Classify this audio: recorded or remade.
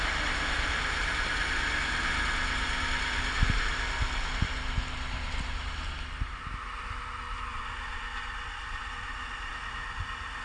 recorded